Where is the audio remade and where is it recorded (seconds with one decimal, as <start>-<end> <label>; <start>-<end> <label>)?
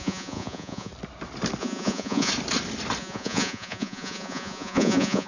0.0-0.9 remade; 0.9-1.6 recorded; 1.6-2.3 remade; 2.3-3.0 recorded; 3.0-5.3 remade